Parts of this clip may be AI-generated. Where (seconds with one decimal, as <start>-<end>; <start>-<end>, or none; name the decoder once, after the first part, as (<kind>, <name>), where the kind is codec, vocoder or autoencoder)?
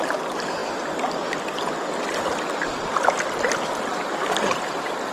3.9-5.1 (vocoder, BigVGAN v2)